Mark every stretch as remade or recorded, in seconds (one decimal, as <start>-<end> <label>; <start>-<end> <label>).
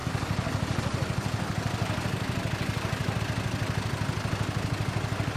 0.0-3.2 remade; 3.2-5.4 recorded